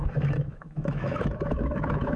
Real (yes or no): no